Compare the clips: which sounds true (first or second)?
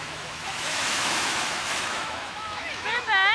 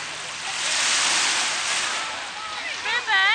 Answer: second